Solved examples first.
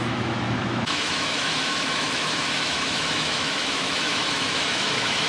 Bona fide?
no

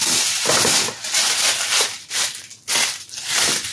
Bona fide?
yes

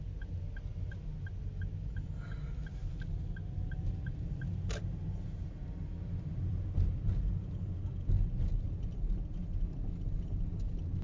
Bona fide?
yes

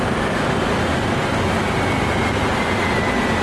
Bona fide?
yes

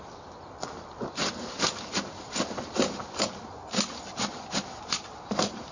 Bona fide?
yes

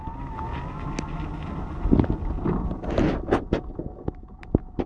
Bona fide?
yes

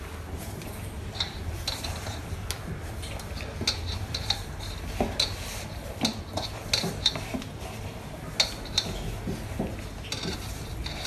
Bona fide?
yes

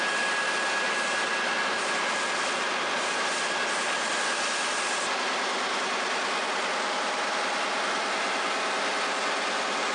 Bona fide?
yes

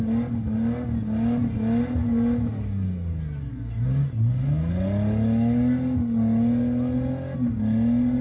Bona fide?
yes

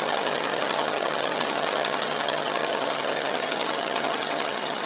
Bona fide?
no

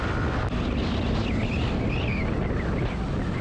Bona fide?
yes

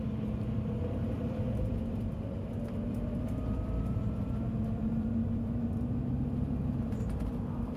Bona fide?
no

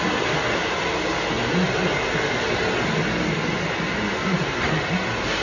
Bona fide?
yes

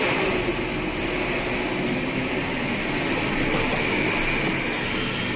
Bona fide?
yes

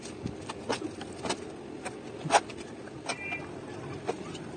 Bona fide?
yes